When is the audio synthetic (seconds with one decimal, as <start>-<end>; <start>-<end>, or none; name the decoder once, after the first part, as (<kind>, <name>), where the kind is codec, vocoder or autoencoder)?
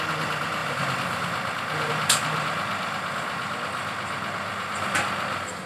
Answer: none